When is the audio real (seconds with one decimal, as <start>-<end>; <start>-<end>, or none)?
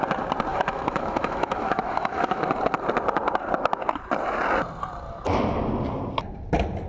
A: 0.0-0.5; 2.4-6.9